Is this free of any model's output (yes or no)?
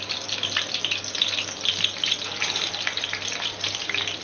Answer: yes